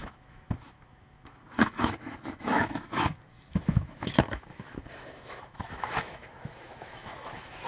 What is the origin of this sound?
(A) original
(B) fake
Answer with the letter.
B